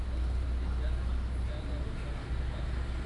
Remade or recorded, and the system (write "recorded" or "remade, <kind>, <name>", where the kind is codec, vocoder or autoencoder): recorded